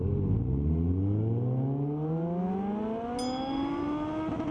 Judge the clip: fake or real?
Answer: real